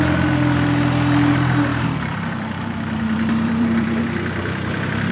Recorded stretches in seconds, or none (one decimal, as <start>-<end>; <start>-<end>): 0.0-1.7